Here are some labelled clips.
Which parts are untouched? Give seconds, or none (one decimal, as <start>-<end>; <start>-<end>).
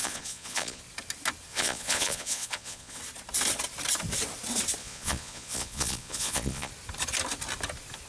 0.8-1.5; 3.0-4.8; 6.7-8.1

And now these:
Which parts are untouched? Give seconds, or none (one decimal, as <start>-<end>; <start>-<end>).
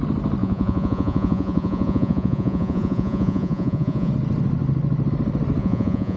0.0-0.4; 4.1-5.6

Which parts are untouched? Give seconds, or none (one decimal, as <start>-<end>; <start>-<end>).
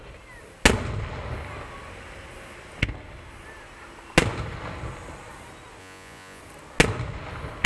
0.0-5.8; 6.4-7.7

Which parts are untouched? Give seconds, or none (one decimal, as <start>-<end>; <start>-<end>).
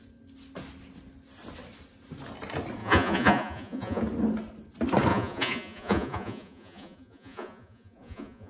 0.0-2.8; 4.0-5.1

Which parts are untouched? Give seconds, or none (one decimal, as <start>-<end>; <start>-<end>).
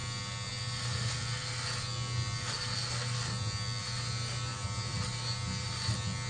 0.0-6.3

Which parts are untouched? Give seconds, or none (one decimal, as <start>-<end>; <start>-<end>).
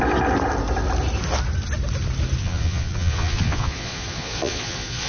0.0-2.4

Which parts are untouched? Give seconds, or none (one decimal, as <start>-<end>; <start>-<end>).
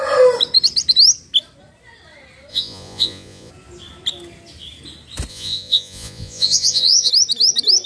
0.0-2.5; 3.5-5.3; 7.1-7.9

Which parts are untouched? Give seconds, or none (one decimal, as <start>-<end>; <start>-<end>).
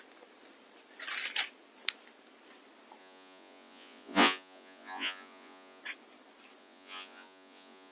0.0-3.0; 5.8-6.6